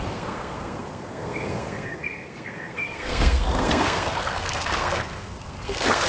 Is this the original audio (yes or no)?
no